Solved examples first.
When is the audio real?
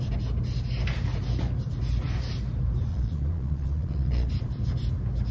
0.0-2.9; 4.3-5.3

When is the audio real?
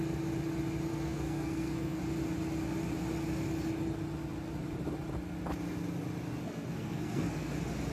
0.0-0.9; 2.0-6.4; 7.5-7.9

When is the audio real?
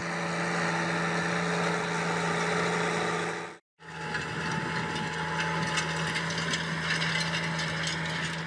0.0-8.5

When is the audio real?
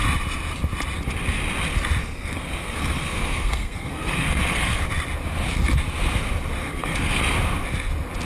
0.0-2.0; 4.8-6.6; 7.2-8.3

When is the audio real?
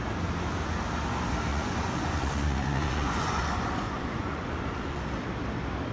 0.0-1.5; 5.0-5.9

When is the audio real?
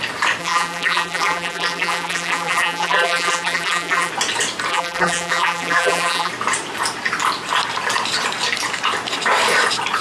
0.0-0.4; 4.1-4.7; 6.3-10.0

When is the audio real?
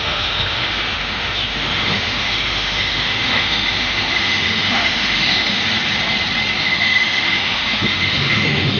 5.6-6.6